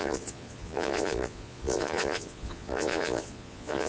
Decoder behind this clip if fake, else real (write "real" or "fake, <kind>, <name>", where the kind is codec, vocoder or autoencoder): fake, vocoder, Vocos